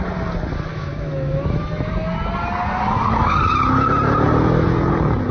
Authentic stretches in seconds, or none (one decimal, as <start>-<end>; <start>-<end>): 0.0-0.7; 1.9-5.3